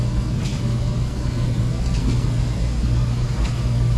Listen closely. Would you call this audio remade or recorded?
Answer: remade